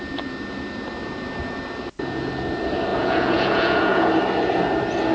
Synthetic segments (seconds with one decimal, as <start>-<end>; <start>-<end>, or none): 2.9-4.1